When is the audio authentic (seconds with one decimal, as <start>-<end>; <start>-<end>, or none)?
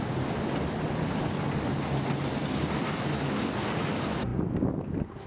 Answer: 0.0-5.3